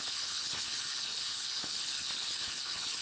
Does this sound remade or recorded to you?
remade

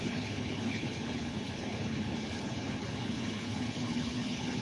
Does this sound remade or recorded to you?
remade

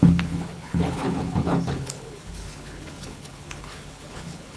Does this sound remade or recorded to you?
remade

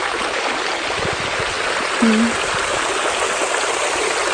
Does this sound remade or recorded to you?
recorded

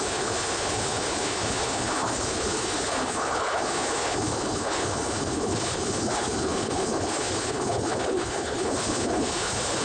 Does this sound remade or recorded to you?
remade